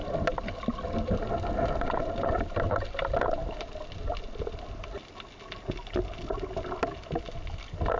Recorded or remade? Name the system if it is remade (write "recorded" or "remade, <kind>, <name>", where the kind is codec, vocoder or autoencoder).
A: recorded